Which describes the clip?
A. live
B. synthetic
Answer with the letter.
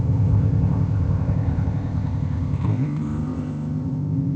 B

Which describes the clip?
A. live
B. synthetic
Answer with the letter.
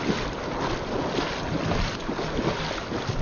A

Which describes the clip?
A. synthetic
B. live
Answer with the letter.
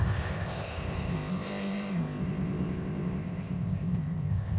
A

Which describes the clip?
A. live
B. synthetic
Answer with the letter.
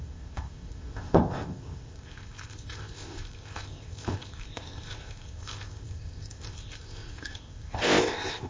B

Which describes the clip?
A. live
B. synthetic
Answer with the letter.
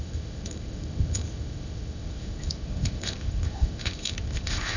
B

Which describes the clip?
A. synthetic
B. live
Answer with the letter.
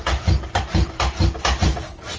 B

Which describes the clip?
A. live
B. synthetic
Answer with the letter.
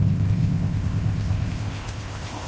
B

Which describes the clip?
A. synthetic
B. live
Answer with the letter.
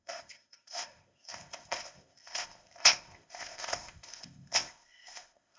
A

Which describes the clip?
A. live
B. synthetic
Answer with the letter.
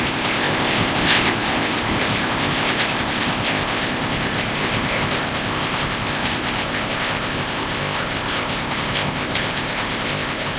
B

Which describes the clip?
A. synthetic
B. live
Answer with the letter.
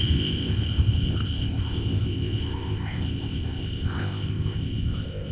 A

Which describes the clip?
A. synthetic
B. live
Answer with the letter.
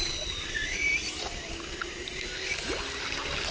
B